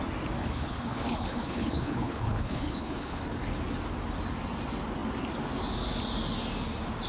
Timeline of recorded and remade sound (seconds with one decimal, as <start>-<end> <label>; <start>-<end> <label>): 0.0-0.4 recorded; 0.4-3.2 remade; 3.2-7.1 recorded